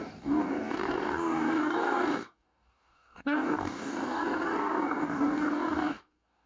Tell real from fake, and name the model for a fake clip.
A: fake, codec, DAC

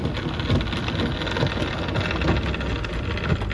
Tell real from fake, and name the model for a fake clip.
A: real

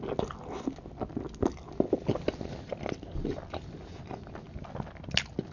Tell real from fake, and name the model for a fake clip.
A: real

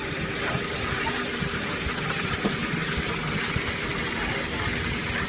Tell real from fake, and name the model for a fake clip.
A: fake, vocoder, BigVGAN v2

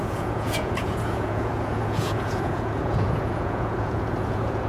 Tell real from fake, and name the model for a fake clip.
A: fake, vocoder, Vocos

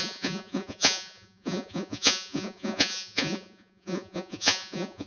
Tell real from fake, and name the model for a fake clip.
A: fake, vocoder, Vocos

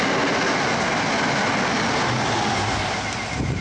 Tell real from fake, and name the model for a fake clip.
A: real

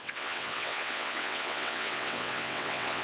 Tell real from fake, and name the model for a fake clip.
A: fake, vocoder, WaveNeXt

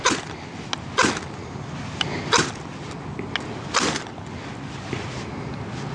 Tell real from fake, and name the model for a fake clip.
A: real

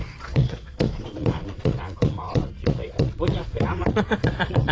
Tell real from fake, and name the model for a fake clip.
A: fake, vocoder, Vocos